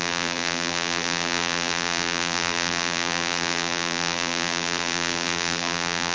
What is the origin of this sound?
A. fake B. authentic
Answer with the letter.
A